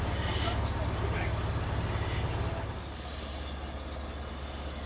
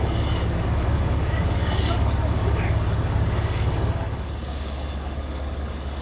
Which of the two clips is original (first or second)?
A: first